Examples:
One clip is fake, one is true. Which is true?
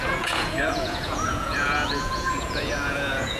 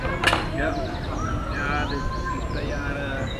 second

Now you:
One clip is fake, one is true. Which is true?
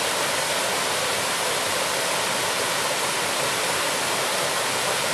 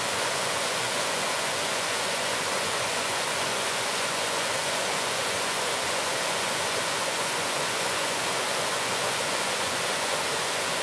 first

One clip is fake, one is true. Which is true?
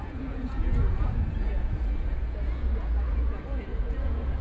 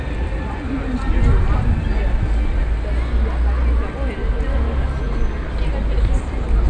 second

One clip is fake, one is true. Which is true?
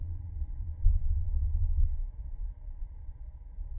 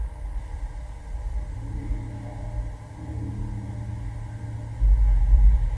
second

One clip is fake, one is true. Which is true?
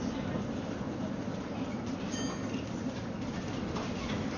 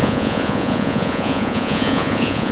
first